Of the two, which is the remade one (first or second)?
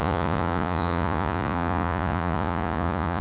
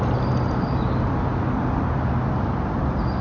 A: first